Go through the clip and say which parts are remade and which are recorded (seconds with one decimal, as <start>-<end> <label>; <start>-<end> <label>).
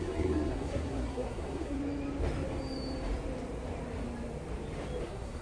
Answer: 0.0-1.8 remade; 1.8-5.0 recorded; 5.0-5.4 remade